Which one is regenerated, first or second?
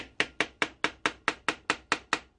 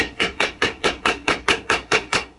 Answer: second